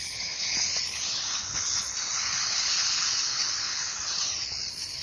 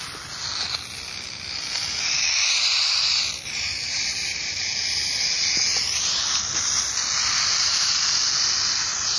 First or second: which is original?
second